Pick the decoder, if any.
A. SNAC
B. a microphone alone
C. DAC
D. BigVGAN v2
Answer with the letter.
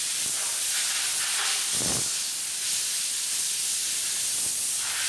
B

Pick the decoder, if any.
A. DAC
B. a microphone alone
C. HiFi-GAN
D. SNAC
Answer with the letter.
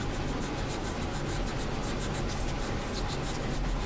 B